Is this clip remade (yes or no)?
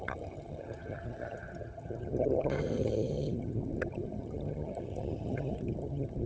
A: yes